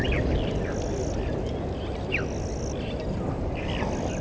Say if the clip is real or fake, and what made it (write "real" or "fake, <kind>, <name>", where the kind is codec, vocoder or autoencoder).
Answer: real